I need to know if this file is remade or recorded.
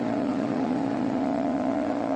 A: remade